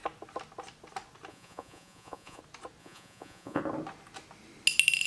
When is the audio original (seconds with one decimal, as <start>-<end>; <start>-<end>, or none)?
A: 0.0-1.3; 2.4-2.8; 3.6-5.1

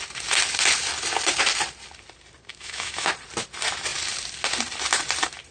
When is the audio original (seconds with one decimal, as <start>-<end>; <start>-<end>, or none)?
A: 0.0-2.5; 3.1-5.5

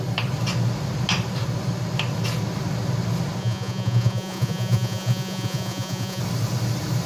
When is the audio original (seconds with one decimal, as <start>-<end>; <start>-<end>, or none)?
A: 0.0-3.4; 6.2-7.1

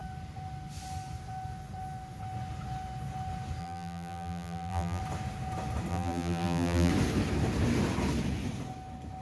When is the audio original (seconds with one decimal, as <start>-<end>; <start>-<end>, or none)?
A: 0.0-3.6; 5.0-5.9; 6.9-9.2

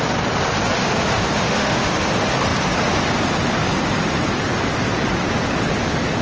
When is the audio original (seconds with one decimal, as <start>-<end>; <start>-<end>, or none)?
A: 0.0-0.8; 2.0-6.2

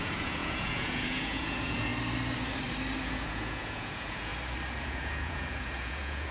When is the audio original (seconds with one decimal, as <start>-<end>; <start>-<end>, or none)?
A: 1.9-3.0; 4.3-4.8